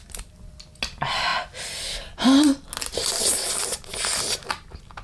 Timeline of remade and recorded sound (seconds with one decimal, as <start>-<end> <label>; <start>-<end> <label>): 0.0-5.0 recorded

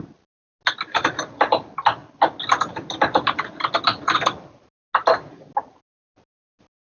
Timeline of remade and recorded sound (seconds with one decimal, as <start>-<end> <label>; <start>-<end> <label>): 0.0-6.9 recorded